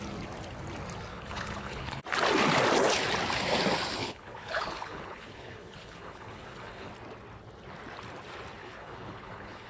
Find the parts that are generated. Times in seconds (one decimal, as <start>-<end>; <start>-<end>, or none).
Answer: 1.1-2.0; 4.0-6.9; 8.6-9.7